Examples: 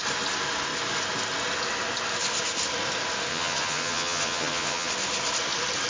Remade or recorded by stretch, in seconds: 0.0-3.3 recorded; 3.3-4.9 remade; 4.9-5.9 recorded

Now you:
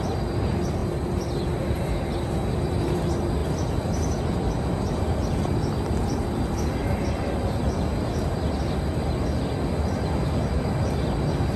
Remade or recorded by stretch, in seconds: 0.0-11.6 recorded

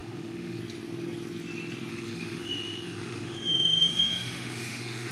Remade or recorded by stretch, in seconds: 0.0-0.6 remade; 0.6-1.9 recorded; 1.9-5.1 remade

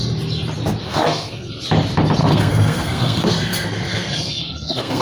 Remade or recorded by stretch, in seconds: 0.0-0.8 recorded; 0.8-1.5 remade; 1.5-2.2 recorded; 2.2-5.0 remade

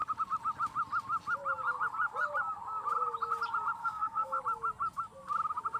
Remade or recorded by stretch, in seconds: 0.0-3.8 recorded; 3.8-4.4 remade; 4.4-5.8 recorded

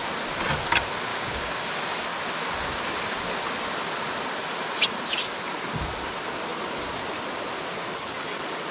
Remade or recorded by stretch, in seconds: 0.0-1.1 recorded; 1.1-1.7 remade; 1.7-8.7 recorded

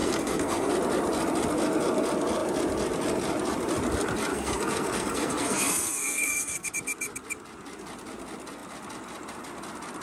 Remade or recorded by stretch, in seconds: 0.0-0.7 remade; 0.7-4.3 recorded; 4.3-6.7 remade; 6.7-10.0 recorded